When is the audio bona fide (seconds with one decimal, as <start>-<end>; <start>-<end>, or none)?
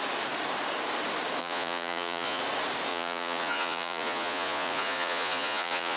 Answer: 0.0-1.4; 2.4-2.9